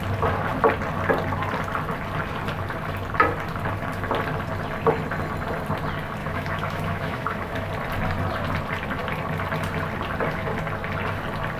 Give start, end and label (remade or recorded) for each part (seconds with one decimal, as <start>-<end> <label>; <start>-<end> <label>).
0.0-6.2 recorded; 6.2-7.7 remade; 7.7-11.6 recorded